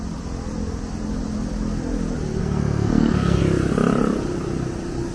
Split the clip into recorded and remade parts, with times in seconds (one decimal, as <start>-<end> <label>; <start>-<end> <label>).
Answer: 0.0-2.4 recorded; 2.4-3.4 remade; 3.4-5.1 recorded